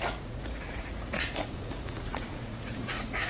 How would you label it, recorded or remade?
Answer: remade